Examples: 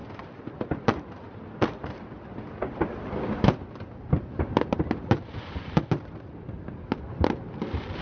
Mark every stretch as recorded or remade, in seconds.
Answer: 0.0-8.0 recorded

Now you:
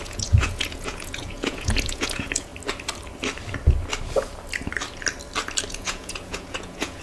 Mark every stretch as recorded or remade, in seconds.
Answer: 0.0-2.5 remade; 2.5-5.7 recorded; 5.7-7.0 remade

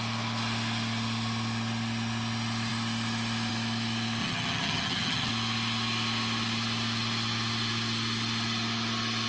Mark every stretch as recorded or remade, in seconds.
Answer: 0.0-4.2 recorded; 4.2-5.3 remade; 5.3-9.3 recorded